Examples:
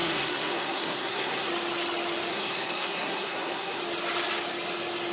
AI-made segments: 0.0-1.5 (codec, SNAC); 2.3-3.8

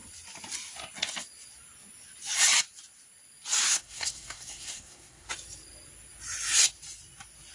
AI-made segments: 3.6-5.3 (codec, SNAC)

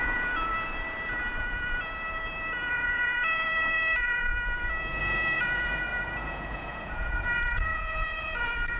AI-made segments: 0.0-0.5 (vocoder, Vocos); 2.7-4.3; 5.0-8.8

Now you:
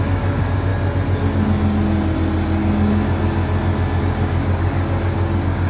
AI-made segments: 0.0-0.7 (codec, DAC); 4.0-5.7

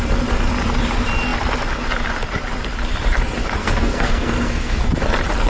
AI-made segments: 3.6-4.8 (codec, SNAC)

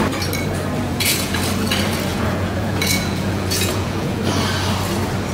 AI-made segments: 0.9-1.4 (vocoder, Vocos); 2.1-4.2

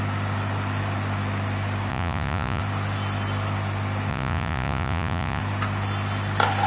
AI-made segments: 1.9-2.6 (vocoder, Vocos); 4.1-5.4

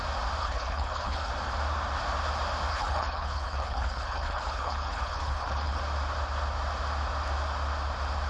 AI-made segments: 0.4-1.3 (codec, HILCodec); 2.7-5.8